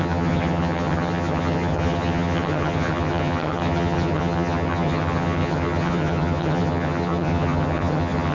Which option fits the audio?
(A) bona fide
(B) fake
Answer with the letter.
B